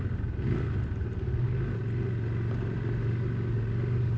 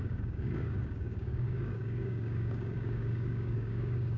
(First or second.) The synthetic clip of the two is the second